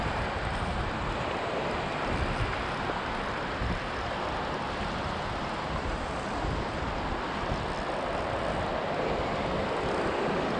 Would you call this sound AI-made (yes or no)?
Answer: no